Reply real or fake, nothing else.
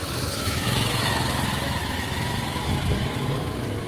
fake